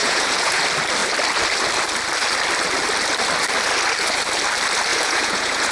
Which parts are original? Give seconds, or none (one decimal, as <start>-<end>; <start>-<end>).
0.6-4.9